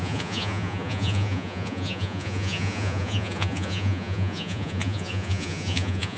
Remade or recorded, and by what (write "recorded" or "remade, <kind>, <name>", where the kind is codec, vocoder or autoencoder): remade, vocoder, Vocos